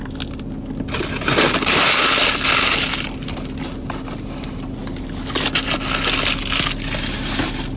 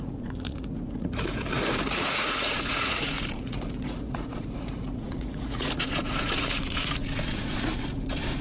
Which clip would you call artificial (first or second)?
second